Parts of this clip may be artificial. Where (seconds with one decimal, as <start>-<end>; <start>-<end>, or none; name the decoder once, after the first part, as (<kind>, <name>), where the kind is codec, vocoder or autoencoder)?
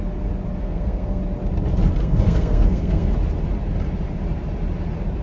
0.6-1.2 (codec, SNAC); 2.0-3.1